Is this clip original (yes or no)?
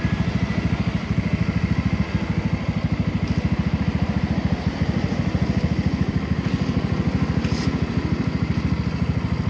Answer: yes